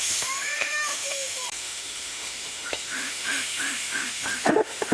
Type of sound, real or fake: fake